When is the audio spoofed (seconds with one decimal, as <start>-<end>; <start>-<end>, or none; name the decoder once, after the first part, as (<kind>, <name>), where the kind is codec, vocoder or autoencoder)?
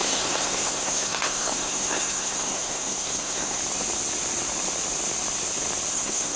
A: 0.0-3.6 (codec, SNAC); 5.9-6.4